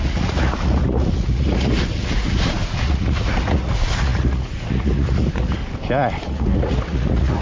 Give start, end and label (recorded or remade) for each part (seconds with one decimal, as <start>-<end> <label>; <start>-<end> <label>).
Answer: 0.0-5.6 remade; 5.6-6.2 recorded; 6.2-7.4 remade